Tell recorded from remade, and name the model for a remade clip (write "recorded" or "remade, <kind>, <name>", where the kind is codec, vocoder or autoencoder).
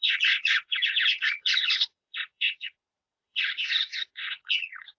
remade, vocoder, Vocos